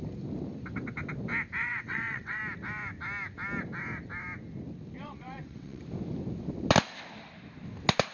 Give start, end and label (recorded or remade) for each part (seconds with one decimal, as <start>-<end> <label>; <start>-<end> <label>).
0.0-1.6 recorded; 1.6-2.4 remade; 2.4-5.0 recorded; 5.0-5.8 remade; 5.8-8.1 recorded